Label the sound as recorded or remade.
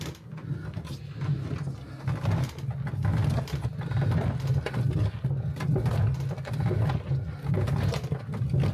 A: recorded